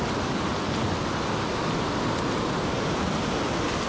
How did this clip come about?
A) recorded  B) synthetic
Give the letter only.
A